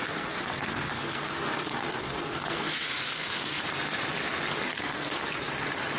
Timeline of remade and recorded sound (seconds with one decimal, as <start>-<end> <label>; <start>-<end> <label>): 0.0-3.6 remade; 3.6-4.7 recorded; 4.7-5.5 remade; 5.5-6.0 recorded